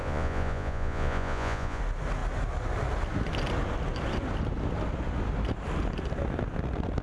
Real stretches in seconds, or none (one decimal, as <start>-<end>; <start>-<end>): 1.8-7.0